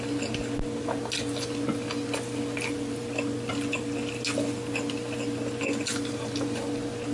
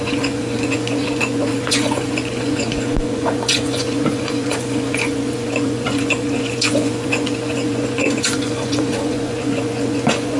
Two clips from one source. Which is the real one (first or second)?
first